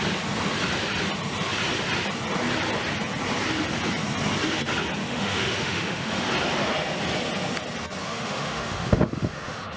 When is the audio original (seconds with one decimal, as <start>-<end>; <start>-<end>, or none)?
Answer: 0.0-5.1; 6.3-8.0